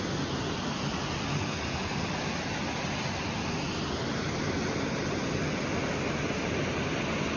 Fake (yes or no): no